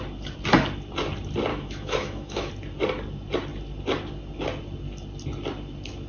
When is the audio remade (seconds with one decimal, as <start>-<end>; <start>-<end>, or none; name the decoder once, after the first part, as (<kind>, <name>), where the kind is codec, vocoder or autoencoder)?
1.5-2.5 (autoencoder, DAC-VAE)

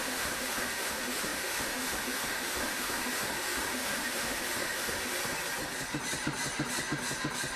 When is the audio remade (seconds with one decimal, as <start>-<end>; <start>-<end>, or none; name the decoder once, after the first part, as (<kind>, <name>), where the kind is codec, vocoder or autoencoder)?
0.0-5.2 (autoencoder, DAC-VAE)

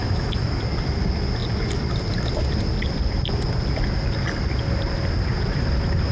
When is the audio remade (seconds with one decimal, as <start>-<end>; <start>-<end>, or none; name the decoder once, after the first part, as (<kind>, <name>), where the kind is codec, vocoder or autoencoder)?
0.0-0.6 (autoencoder, DAC-VAE)

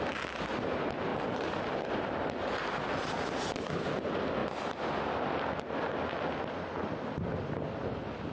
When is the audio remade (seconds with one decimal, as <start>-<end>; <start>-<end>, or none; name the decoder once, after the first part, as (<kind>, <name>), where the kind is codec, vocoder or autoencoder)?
none

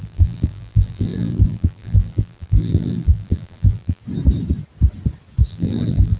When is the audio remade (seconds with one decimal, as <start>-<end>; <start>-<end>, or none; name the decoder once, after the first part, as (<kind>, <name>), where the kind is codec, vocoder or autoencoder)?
0.0-4.0 (vocoder, BigVGAN v2); 5.5-6.2

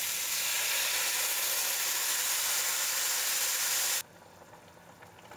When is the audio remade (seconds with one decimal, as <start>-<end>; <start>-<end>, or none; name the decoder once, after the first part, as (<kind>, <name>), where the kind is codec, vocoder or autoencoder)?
1.6-4.5 (vocoder, BigVGAN v2)

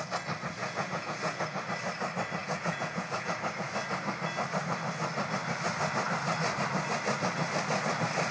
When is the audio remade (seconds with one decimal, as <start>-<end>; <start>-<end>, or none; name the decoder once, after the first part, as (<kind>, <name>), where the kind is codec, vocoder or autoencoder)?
0.6-1.6 (vocoder, Vocos); 2.4-3.3

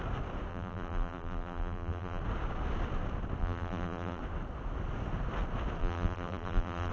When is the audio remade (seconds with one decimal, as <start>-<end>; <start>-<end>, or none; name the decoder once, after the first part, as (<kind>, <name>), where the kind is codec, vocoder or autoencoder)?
0.5-2.2 (vocoder, BigVGAN v2); 3.4-4.2; 5.8-6.9